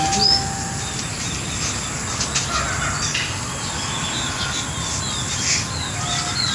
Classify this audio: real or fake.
real